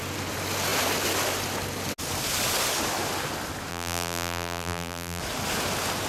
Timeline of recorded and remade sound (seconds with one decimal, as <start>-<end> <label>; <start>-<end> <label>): 0.0-3.7 recorded; 3.7-5.2 remade; 5.2-6.1 recorded